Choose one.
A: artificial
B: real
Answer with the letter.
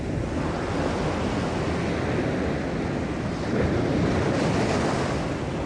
B